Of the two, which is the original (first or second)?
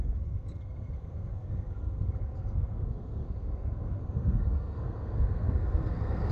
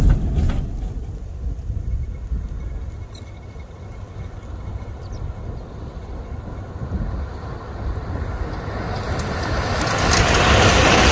second